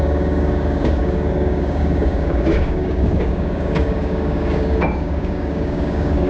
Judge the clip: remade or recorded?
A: remade